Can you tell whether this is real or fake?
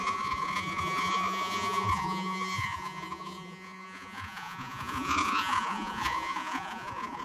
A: fake